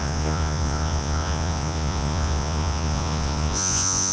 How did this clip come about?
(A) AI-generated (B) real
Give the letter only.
A